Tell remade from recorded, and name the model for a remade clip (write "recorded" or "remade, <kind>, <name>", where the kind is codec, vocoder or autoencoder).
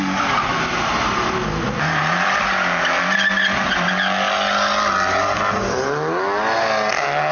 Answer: recorded